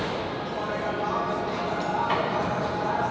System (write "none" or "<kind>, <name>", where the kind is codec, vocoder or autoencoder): none